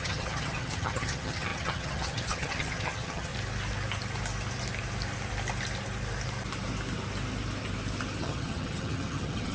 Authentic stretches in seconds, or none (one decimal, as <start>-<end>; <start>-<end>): 3.3-8.2